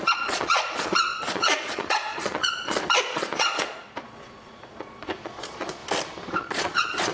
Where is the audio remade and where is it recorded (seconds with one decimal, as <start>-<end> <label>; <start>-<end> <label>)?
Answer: 0.0-5.8 remade; 5.8-6.4 recorded; 6.4-7.1 remade